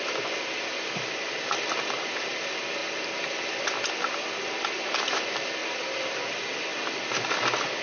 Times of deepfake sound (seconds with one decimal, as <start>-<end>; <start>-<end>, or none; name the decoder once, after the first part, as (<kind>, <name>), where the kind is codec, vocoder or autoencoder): 0.7-2.2 (vocoder, BigVGAN v2)